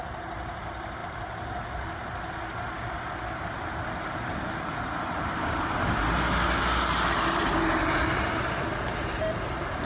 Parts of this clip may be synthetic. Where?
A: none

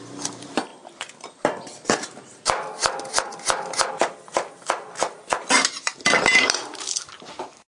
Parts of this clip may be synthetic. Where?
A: none

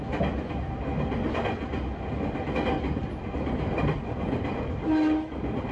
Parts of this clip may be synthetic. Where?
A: none

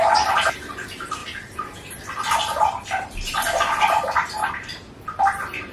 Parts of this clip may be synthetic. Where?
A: none

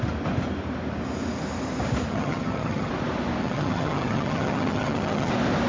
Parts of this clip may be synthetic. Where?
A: 2.1-2.9 (vocoder, HiFi-GAN); 3.4-5.3

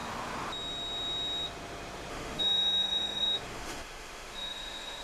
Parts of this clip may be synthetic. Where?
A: 2.1-5.0 (autoencoder, DAC-VAE)

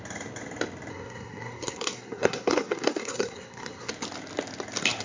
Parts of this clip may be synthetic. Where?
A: 0.9-3.9 (codec, SNAC)

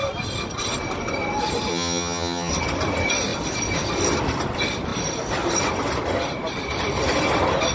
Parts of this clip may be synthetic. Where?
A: 1.7-2.5 (vocoder, HiFi-GAN)